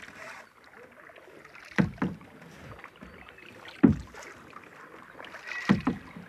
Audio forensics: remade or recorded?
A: recorded